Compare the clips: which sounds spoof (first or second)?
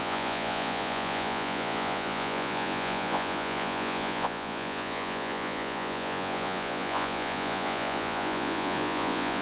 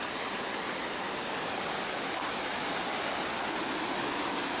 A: first